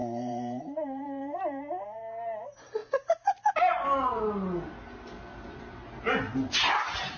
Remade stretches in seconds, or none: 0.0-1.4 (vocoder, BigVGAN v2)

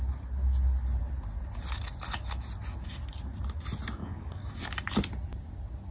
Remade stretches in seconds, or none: 4.0-4.7 (codec, DAC)

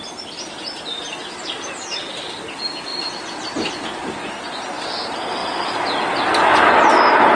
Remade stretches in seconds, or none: none

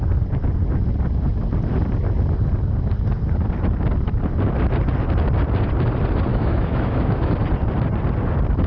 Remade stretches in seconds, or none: 6.3-7.3 (autoencoder, DAC-VAE)

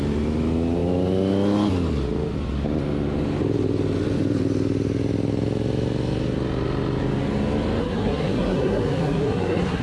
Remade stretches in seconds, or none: 7.8-9.8 (codec, SNAC)

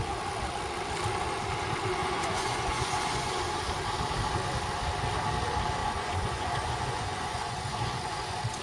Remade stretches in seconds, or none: 2.0-3.4 (vocoder, Vocos); 5.8-8.6

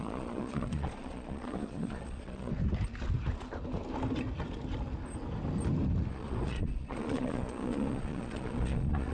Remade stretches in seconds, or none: 0.0-2.5 (vocoder, Vocos); 6.1-9.1

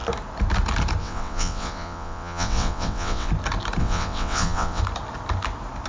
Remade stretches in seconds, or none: 1.0-3.3 (vocoder, WaveNeXt); 3.8-4.8